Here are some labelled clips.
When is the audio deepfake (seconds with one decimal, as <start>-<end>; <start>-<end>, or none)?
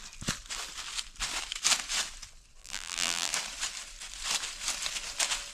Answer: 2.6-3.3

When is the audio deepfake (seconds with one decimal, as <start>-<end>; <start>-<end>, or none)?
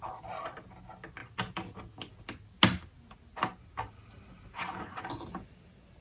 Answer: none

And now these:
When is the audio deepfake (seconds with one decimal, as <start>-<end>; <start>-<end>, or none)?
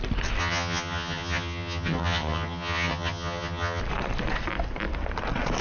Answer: 0.4-3.8